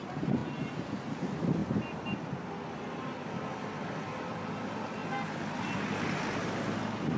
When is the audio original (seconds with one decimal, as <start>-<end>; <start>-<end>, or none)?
0.4-1.2; 1.6-4.3; 5.0-6.0